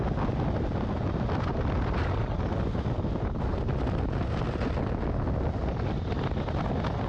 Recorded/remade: recorded